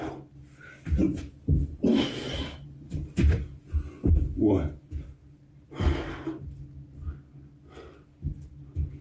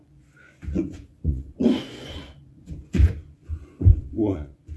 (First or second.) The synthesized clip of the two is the second